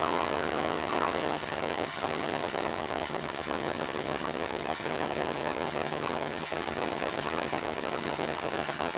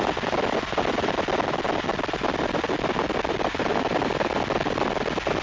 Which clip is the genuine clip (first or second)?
second